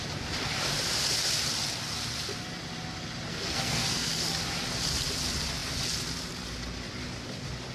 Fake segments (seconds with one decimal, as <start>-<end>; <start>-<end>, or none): 3.3-4.1